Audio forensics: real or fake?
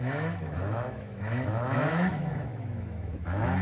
fake